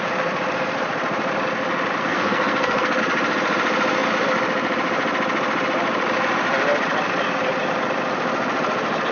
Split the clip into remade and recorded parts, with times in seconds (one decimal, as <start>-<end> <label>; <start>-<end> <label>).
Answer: 0.0-2.0 recorded; 2.0-3.0 remade; 3.0-9.1 recorded